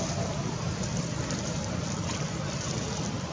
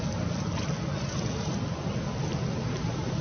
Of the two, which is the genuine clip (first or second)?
second